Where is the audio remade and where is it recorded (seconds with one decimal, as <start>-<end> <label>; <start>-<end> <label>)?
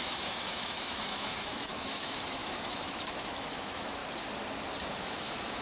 0.0-4.0 remade; 4.0-5.0 recorded; 5.0-5.6 remade